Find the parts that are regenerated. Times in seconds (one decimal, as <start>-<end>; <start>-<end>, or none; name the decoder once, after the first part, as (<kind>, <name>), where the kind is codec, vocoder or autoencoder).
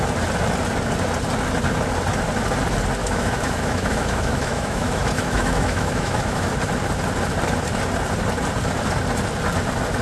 3.0-6.5 (autoencoder, DAC-VAE)